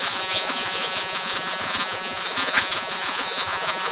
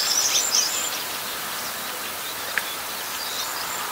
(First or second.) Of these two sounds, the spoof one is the first